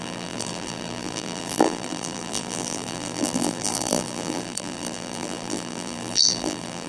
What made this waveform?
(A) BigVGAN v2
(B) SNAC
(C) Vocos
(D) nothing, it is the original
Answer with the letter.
A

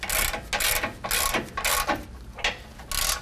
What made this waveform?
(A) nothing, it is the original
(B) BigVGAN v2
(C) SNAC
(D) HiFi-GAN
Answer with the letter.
A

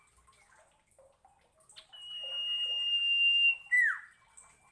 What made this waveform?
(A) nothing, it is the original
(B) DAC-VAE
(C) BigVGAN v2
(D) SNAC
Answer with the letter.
A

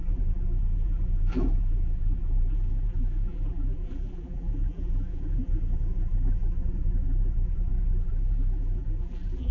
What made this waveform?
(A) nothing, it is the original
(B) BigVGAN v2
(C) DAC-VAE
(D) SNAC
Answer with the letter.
B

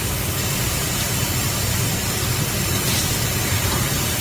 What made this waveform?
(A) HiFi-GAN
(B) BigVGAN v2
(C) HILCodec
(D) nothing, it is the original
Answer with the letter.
B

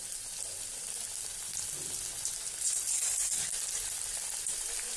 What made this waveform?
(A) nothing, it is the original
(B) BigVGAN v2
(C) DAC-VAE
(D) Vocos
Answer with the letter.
A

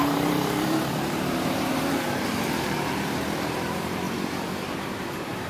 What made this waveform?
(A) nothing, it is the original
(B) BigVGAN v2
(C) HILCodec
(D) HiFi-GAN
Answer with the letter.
B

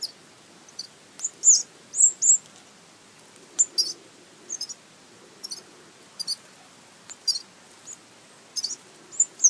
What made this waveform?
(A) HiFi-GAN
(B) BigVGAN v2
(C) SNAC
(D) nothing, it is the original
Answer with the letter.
D